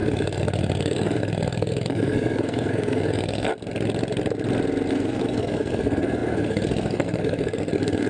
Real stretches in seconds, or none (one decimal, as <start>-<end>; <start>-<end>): 3.5-4.9